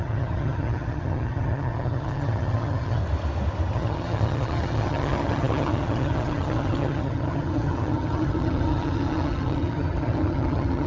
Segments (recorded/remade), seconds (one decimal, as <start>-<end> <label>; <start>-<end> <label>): 0.0-3.0 remade; 3.0-3.7 recorded; 3.7-10.9 remade